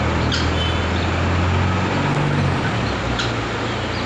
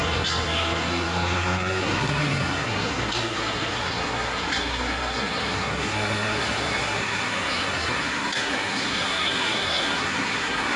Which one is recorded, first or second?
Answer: first